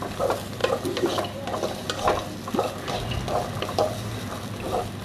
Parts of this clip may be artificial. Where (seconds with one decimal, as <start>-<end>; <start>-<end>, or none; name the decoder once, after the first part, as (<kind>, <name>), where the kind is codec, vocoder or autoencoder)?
none